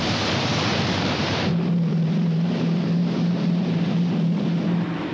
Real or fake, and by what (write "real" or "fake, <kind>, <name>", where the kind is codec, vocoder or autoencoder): fake, vocoder, BigVGAN v2